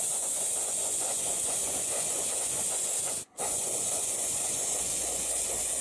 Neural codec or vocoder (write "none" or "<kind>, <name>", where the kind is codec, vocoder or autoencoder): vocoder, Vocos